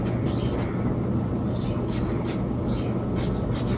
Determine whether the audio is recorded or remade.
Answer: recorded